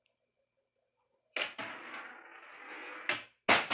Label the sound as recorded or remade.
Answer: recorded